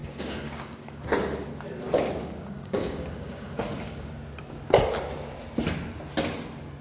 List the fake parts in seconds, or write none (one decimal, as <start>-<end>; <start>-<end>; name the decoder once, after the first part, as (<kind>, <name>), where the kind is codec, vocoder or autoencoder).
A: 0.0-1.0 (codec, DAC); 2.2-4.1

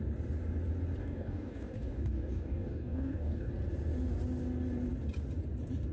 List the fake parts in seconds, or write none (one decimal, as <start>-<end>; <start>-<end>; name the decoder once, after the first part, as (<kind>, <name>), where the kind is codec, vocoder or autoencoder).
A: 1.0-3.5 (codec, DAC)